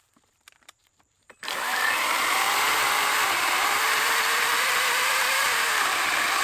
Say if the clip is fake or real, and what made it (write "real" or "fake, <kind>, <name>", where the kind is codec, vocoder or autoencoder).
fake, vocoder, BigVGAN v2